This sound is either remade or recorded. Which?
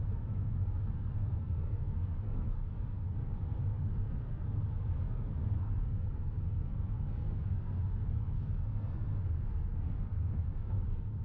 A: remade